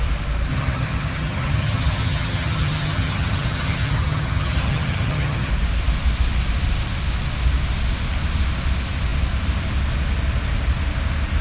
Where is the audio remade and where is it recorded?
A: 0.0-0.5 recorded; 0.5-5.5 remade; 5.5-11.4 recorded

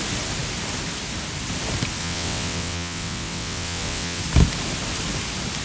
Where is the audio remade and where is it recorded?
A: 0.0-2.0 recorded; 2.0-4.2 remade; 4.2-5.6 recorded

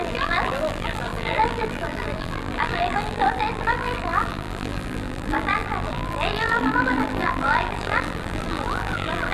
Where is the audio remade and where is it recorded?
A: 0.0-9.3 remade

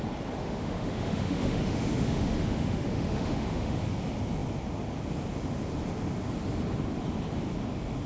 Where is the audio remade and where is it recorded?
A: 0.0-0.4 recorded; 0.4-3.8 remade; 3.8-8.1 recorded

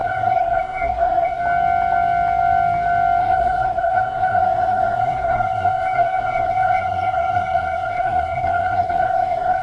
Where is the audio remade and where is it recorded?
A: 0.0-1.4 remade; 1.4-3.2 recorded; 3.2-9.6 remade

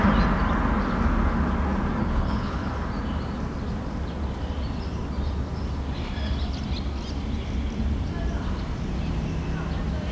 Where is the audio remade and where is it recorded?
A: 0.0-2.0 recorded; 2.0-2.7 remade; 2.7-10.1 recorded

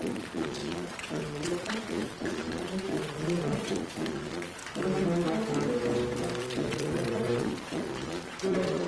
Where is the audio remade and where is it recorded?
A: 0.0-4.6 remade; 4.6-6.4 recorded; 6.4-8.9 remade